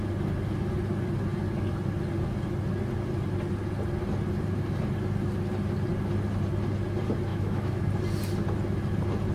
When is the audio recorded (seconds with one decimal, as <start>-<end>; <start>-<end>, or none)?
0.0-7.3; 7.8-9.3